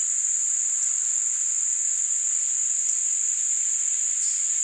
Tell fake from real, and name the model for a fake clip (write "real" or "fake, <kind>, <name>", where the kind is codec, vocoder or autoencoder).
fake, vocoder, BigVGAN v2